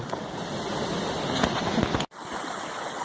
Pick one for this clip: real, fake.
real